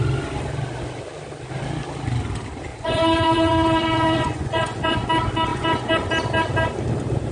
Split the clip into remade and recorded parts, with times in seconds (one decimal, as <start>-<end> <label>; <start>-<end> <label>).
0.0-2.7 recorded; 2.7-5.0 remade; 5.0-5.5 recorded; 5.5-6.1 remade; 6.1-7.3 recorded